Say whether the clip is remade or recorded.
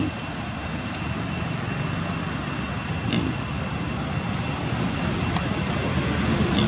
recorded